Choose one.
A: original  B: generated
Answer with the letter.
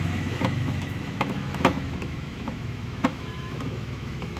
B